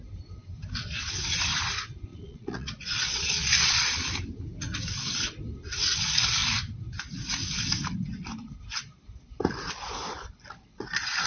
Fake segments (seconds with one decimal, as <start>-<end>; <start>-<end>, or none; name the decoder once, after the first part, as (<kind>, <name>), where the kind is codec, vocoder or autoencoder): 2.1-4.1 (vocoder, Vocos)